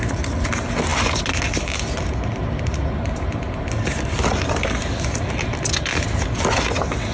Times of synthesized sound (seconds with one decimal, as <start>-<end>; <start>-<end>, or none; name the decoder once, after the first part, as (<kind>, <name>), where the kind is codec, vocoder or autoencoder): none